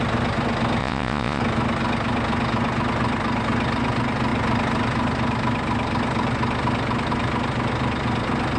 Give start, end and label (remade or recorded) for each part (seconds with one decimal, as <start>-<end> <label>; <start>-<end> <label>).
0.0-0.8 recorded; 0.8-1.4 remade; 1.4-8.6 recorded